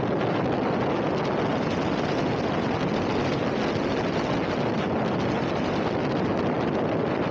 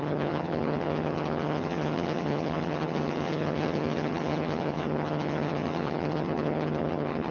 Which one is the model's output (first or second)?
second